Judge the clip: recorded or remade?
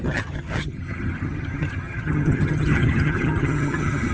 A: remade